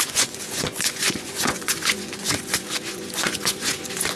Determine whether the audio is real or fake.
fake